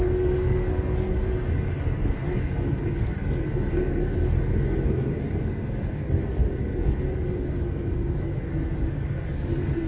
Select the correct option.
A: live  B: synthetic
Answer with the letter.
B